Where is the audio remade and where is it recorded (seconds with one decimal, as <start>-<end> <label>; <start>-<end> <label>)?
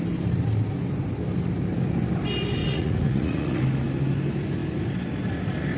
0.0-2.6 recorded; 2.6-3.6 remade; 3.6-5.8 recorded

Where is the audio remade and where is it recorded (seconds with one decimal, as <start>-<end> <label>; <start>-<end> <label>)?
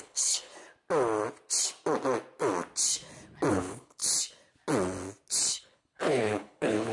0.0-0.5 remade; 0.5-3.5 recorded; 3.5-4.0 remade; 4.0-5.5 recorded; 5.5-6.9 remade